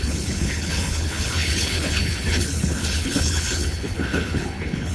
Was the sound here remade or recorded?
remade